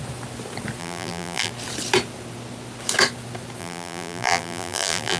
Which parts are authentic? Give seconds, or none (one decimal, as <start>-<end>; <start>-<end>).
0.0-0.8; 1.5-3.6